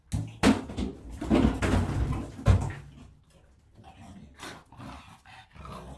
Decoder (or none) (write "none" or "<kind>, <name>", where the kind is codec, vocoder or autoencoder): none